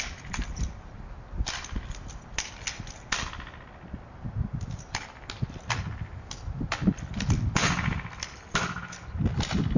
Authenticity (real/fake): real